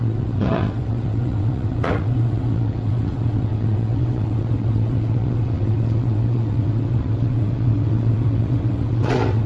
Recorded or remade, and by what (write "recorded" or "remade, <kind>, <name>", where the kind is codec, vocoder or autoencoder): remade, vocoder, WaveNeXt